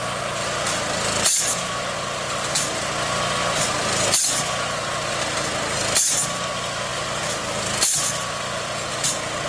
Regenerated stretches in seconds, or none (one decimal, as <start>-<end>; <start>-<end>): 6.9-8.9